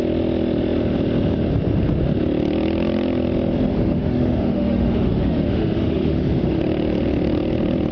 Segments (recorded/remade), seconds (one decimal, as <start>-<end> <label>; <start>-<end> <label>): 0.0-3.7 recorded; 3.7-6.6 remade; 6.6-7.9 recorded

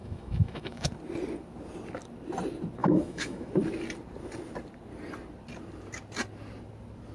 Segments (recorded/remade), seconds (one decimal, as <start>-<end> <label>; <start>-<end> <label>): 0.0-0.9 remade; 0.9-2.8 recorded; 2.8-3.5 remade; 3.5-7.1 recorded

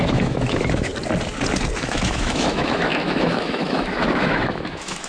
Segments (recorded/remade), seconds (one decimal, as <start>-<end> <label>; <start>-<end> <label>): 0.0-0.9 remade; 0.9-1.8 recorded; 1.8-5.1 remade

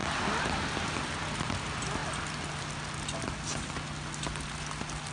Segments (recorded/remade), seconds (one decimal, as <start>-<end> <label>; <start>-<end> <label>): 0.0-5.1 recorded

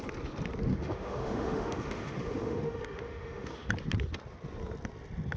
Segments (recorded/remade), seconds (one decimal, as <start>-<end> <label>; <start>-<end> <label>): 0.0-0.7 recorded; 0.7-3.7 remade; 3.7-5.4 recorded

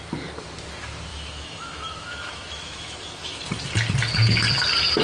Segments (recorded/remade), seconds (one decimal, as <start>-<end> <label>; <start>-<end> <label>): 0.0-1.1 recorded; 1.1-3.4 remade; 3.4-5.0 recorded